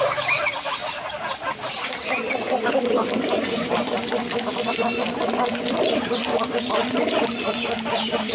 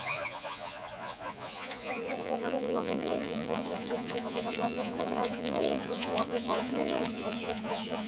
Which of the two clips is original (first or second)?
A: first